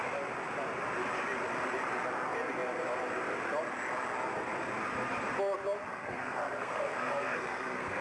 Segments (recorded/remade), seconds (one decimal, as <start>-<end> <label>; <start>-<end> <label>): 0.0-5.9 recorded; 5.9-8.0 remade